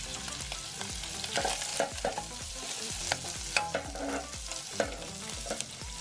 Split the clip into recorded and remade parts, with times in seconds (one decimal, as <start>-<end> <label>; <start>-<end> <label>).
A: 0.0-1.7 recorded; 1.7-3.0 remade; 3.0-6.0 recorded